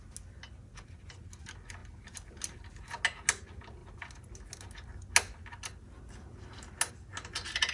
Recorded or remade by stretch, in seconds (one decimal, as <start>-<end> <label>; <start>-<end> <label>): 0.0-7.7 recorded